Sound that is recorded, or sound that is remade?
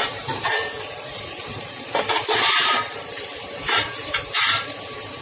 remade